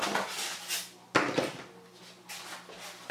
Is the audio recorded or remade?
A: recorded